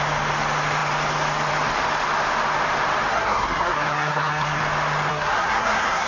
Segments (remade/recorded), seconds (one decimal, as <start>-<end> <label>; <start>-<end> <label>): 0.0-3.1 recorded; 3.1-4.6 remade; 4.6-5.1 recorded; 5.1-6.1 remade

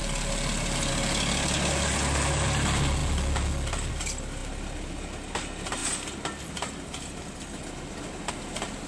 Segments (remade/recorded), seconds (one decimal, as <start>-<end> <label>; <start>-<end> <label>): 0.0-8.9 recorded

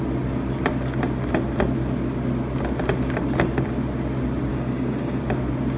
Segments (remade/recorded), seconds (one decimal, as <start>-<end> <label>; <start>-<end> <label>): 0.0-4.5 recorded; 4.5-5.2 remade; 5.2-5.8 recorded

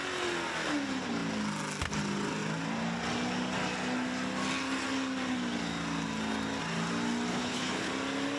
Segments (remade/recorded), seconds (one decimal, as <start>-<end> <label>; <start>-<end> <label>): 0.0-7.3 recorded; 7.3-7.9 remade; 7.9-8.4 recorded

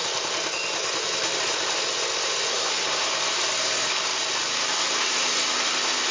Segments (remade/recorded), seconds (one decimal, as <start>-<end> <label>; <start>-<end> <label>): 0.0-2.5 recorded; 2.5-3.1 remade; 3.1-6.1 recorded

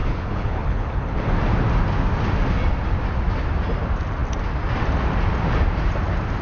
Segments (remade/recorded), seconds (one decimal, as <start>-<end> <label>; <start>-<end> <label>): 0.0-1.3 remade; 1.3-6.4 recorded